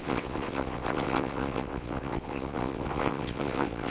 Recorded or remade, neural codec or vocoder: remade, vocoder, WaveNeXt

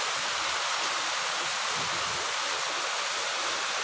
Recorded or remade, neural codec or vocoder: recorded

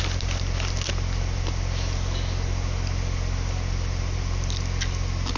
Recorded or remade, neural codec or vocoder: recorded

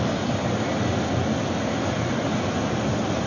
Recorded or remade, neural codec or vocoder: recorded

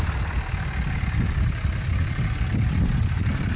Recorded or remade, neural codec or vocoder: recorded